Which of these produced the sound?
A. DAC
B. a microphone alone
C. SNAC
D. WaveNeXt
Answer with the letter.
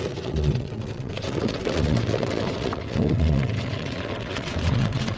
D